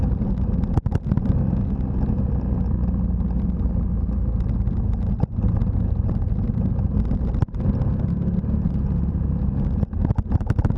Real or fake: real